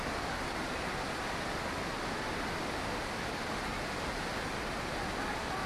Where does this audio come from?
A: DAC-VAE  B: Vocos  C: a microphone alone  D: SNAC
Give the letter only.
C